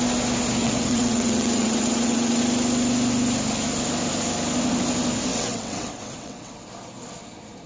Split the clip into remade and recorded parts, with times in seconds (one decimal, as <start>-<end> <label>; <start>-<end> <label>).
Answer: 0.0-0.6 recorded; 0.6-2.4 remade; 2.4-5.3 recorded; 5.3-6.5 remade; 6.5-7.7 recorded